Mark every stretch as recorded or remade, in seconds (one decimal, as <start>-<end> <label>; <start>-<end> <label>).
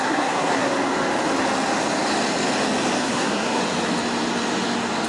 0.0-0.7 remade; 0.7-3.0 recorded; 3.0-3.6 remade; 3.6-5.1 recorded